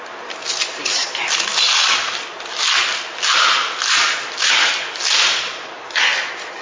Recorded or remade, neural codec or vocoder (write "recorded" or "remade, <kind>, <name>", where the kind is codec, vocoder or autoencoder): recorded